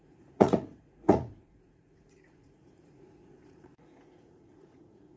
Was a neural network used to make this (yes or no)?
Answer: yes